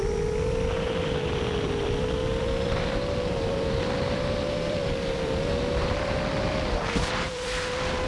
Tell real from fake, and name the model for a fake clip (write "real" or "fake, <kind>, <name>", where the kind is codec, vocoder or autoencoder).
fake, vocoder, BigVGAN v2